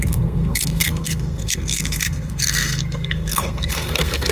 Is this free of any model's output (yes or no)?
no